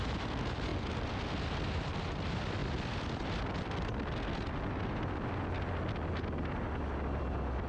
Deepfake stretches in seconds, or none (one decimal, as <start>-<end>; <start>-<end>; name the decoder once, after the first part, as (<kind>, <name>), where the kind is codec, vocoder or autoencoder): none